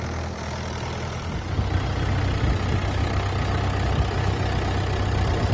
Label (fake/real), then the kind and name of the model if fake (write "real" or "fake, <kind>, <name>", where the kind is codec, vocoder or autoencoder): real